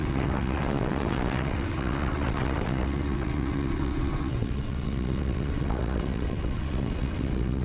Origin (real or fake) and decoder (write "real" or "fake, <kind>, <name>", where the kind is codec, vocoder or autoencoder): fake, vocoder, WaveNeXt